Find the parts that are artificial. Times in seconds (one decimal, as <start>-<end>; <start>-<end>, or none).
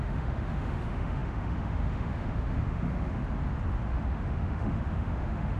0.0-3.2; 3.9-5.6